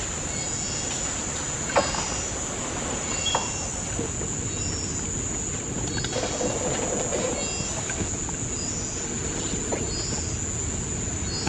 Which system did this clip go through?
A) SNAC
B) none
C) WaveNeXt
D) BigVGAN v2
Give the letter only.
B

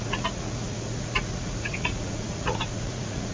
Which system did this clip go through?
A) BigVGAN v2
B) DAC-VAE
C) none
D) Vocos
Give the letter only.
D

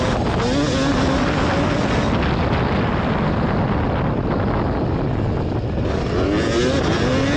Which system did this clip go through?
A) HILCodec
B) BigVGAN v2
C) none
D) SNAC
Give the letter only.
C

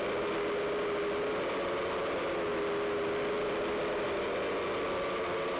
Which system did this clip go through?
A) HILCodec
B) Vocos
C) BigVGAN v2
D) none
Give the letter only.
D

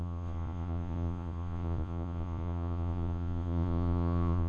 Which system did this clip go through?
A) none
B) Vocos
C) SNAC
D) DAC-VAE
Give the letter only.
B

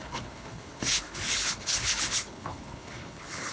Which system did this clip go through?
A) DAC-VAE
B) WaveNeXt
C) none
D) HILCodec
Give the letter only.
D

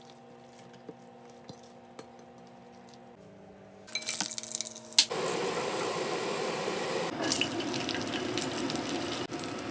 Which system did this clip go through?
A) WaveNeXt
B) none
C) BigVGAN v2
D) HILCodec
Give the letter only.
B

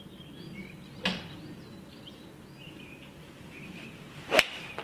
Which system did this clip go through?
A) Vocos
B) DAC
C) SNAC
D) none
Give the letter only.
D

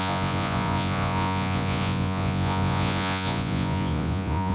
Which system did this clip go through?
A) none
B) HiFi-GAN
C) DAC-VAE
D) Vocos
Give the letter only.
D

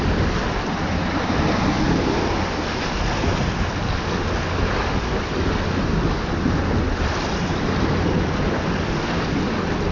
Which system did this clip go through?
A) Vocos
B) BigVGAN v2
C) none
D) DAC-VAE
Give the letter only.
C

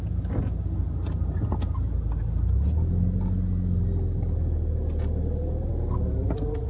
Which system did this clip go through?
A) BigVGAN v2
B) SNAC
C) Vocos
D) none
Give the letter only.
D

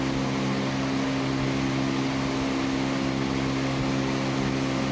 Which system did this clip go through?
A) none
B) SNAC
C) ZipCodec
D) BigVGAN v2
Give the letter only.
A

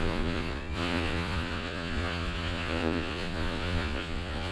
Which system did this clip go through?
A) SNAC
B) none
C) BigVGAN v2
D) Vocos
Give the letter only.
D